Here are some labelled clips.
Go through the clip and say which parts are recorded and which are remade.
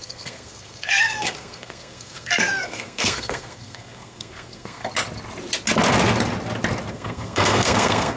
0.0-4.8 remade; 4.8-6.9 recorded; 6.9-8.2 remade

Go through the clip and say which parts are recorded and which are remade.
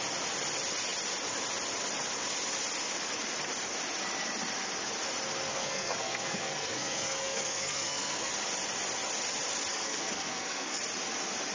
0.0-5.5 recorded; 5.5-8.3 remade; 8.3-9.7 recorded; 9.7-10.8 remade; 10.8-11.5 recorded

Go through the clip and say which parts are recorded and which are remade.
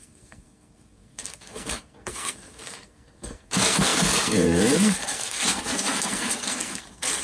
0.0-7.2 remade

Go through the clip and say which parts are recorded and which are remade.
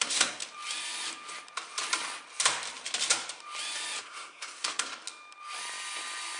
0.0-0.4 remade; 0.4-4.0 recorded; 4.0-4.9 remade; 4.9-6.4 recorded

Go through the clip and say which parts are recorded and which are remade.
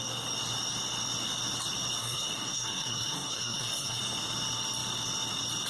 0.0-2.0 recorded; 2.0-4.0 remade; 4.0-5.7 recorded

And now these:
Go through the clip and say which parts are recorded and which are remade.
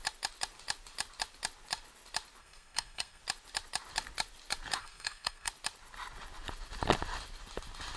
0.0-2.4 recorded; 2.4-3.2 remade; 3.2-4.8 recorded; 4.8-5.5 remade; 5.5-8.0 recorded